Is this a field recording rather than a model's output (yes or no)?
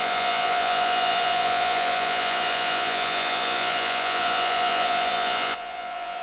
no